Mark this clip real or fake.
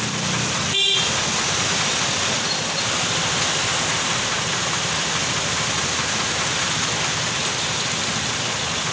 real